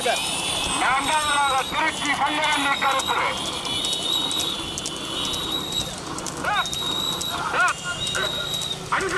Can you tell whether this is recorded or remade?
recorded